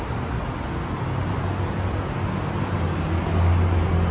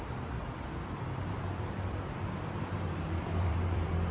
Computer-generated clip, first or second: second